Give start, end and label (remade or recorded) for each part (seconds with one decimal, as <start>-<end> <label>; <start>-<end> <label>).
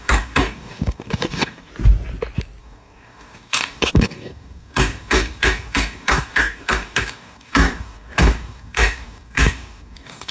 0.0-1.7 remade; 1.7-2.6 recorded; 2.6-10.3 remade